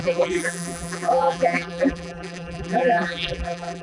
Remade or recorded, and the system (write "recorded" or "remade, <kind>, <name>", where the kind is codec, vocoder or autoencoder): remade, vocoder, BigVGAN v2